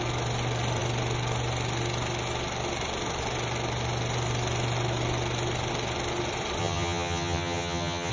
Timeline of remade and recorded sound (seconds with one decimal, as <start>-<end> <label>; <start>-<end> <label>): 0.0-6.6 recorded; 6.6-8.1 remade